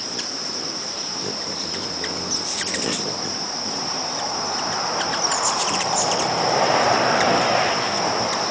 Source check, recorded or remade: remade